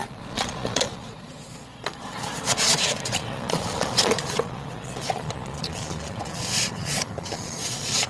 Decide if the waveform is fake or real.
fake